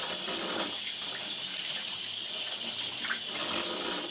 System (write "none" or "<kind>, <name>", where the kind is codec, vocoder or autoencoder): none